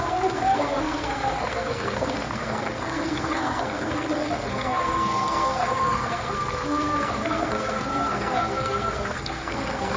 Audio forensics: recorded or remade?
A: remade